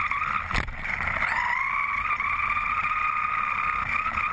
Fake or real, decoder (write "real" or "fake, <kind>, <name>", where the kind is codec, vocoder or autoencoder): real